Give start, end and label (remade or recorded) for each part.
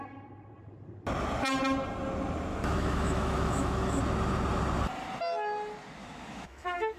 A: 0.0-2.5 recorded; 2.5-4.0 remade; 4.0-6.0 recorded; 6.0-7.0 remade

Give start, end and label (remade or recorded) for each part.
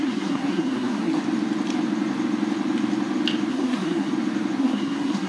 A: 0.0-1.2 remade; 1.2-3.5 recorded; 3.5-4.1 remade; 4.1-4.6 recorded; 4.6-5.3 remade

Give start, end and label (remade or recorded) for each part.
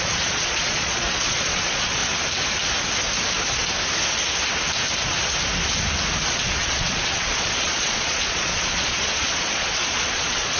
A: 0.0-2.0 remade; 2.0-6.3 recorded; 6.3-10.6 remade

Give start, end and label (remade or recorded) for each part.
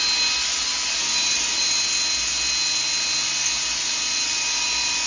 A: 0.0-5.1 recorded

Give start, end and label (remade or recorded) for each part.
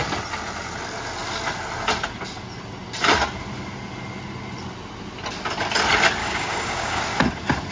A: 0.0-6.2 recorded; 6.2-7.0 remade; 7.0-7.7 recorded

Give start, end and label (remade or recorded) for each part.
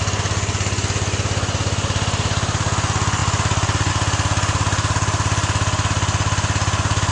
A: 0.0-7.1 recorded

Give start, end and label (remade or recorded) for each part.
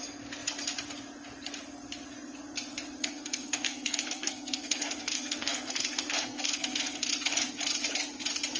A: 0.0-3.0 recorded; 3.0-7.1 remade; 7.1-8.6 recorded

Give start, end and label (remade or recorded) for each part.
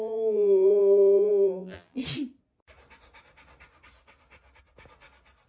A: 0.0-2.0 remade; 2.0-5.5 recorded